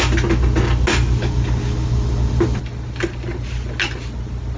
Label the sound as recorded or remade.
recorded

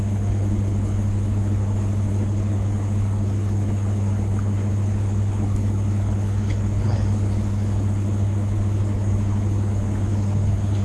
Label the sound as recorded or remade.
remade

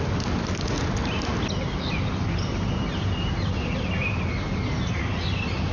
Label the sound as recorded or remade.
recorded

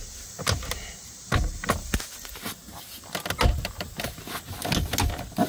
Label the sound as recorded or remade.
recorded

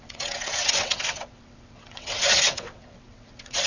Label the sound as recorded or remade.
remade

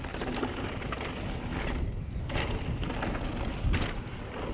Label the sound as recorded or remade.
recorded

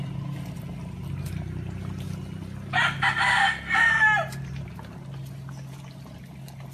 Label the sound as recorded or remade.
recorded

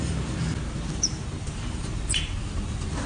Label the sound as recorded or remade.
recorded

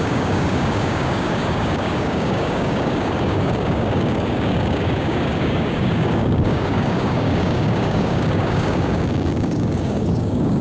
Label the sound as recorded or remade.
remade